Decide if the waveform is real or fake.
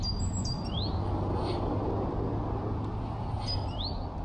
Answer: real